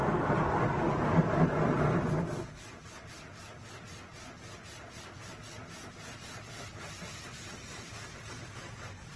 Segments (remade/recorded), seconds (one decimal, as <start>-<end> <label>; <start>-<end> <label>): 0.0-9.2 recorded